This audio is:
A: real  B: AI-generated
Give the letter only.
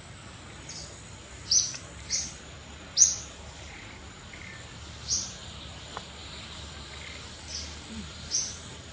A